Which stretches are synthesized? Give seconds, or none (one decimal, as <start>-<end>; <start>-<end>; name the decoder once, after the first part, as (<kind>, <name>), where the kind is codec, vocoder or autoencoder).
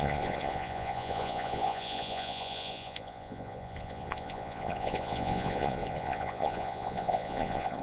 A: 0.0-7.8 (vocoder, Vocos)